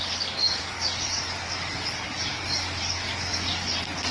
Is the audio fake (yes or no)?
yes